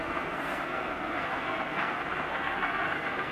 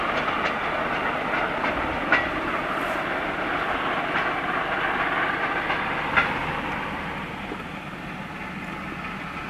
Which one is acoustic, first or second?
second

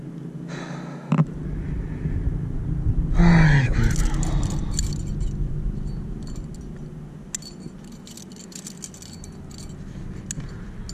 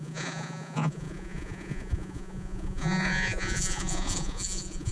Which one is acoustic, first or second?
first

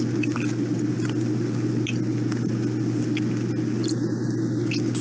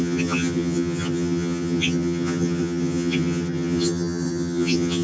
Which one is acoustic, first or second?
first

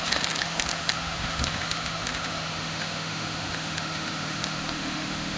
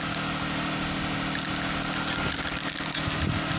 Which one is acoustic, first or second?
second